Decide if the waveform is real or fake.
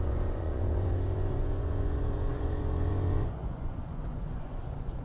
fake